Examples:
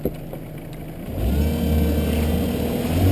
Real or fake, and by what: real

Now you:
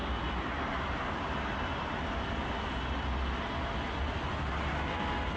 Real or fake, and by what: real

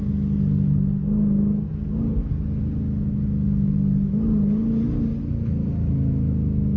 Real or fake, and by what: real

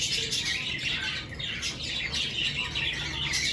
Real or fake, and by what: real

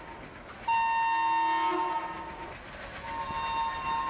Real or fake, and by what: real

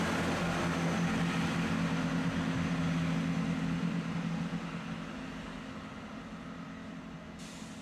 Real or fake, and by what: real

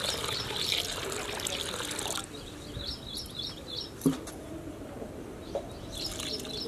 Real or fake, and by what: real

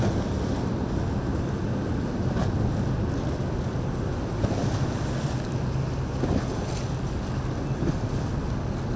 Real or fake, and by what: real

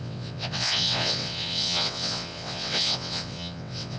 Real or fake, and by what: fake, vocoder, WaveNeXt